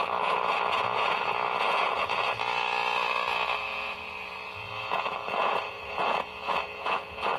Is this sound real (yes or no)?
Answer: no